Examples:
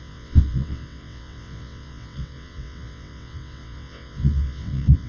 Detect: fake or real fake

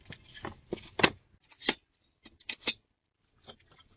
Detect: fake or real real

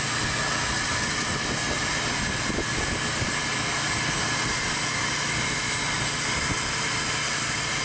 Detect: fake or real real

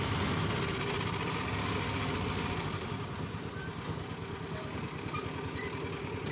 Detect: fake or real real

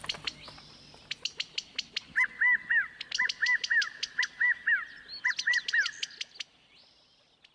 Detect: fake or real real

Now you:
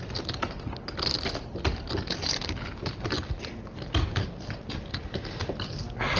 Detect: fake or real real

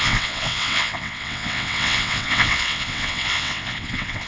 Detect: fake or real fake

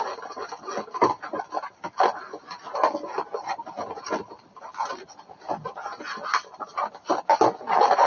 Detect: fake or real real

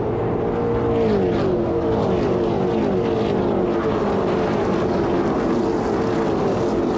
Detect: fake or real real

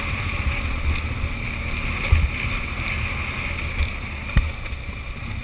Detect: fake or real real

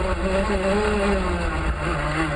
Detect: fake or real real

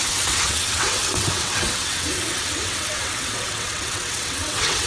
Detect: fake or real fake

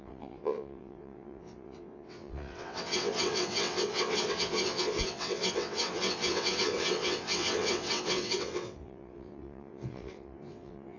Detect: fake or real fake